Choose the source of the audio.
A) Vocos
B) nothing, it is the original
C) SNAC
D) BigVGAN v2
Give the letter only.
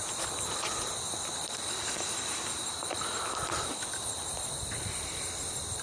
B